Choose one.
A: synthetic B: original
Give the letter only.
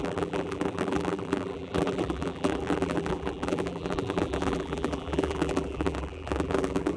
A